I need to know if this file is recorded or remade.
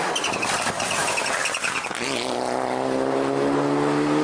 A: recorded